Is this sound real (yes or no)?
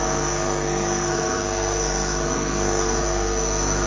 no